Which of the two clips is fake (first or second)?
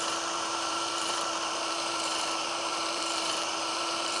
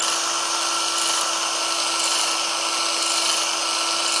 first